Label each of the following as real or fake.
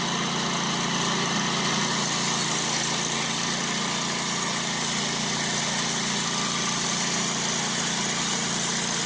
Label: real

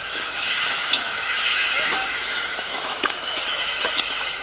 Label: fake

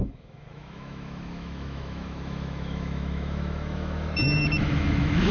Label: fake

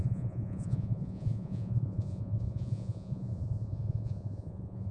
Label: fake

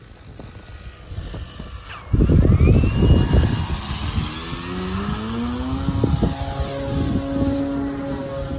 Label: real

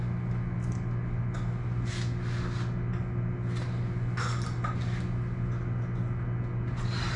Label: real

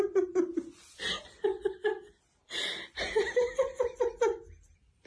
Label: real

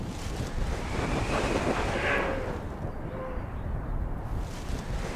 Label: real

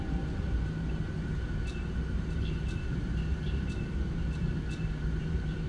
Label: fake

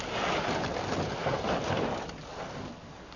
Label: real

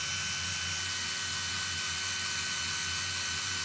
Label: real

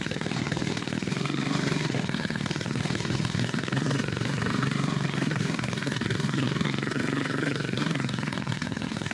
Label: fake